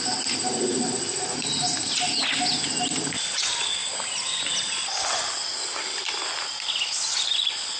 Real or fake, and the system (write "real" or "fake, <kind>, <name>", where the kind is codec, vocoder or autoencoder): real